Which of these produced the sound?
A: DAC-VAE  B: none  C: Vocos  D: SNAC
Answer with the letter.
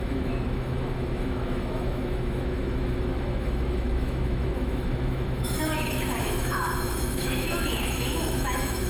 A